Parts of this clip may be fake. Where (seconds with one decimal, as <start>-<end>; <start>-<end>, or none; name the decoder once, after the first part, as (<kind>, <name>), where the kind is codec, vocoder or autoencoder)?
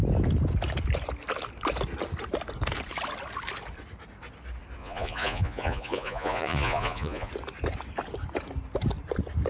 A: 4.8-7.3 (vocoder, Vocos)